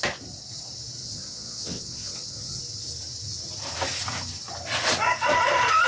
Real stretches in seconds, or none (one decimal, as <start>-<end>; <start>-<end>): 0.0-1.0; 2.6-5.9

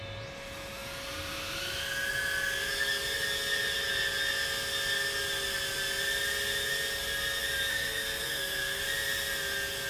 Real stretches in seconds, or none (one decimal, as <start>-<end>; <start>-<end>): 0.0-7.7; 8.8-9.9

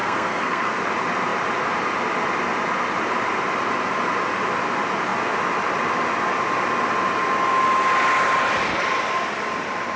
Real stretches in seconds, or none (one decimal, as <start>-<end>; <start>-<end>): 0.8-10.0

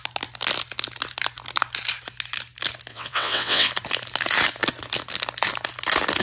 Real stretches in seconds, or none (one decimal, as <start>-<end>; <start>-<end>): 0.0-2.9; 3.7-6.2

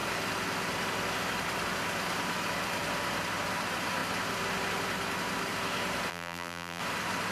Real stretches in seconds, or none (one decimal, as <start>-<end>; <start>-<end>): 0.0-6.1; 6.8-7.3

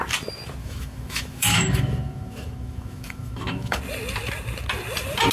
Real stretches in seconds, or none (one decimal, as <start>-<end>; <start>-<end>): 0.0-0.6; 3.8-5.3

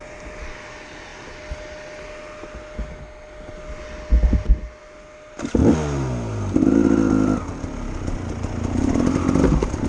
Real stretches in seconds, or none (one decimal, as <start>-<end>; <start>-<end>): 0.0-9.9